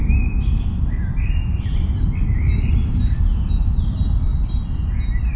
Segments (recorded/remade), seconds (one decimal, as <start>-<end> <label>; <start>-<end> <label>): 0.0-1.4 recorded; 1.4-3.7 remade; 3.7-5.4 recorded